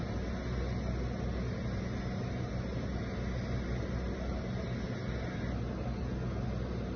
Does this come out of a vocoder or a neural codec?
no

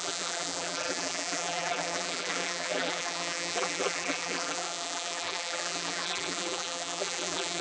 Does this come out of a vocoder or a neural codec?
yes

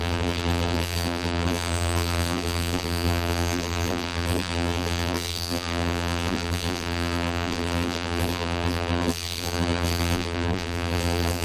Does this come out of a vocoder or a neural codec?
yes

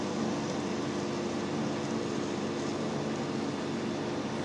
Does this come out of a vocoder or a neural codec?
no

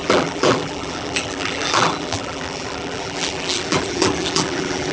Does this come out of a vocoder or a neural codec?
yes